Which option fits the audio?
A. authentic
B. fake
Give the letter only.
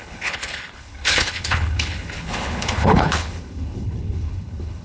B